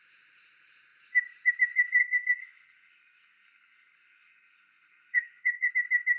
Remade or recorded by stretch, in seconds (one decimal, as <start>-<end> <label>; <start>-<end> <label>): 0.0-2.0 recorded; 2.0-5.7 remade; 5.7-6.2 recorded